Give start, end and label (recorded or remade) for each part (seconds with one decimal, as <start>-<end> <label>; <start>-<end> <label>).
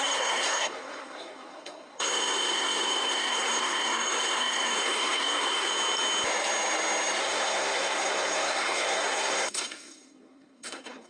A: 0.0-5.7 remade; 5.7-7.2 recorded; 7.2-11.1 remade